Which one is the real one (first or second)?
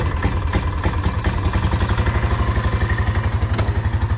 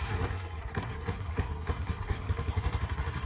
first